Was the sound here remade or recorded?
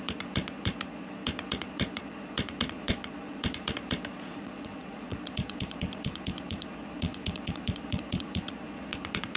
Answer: remade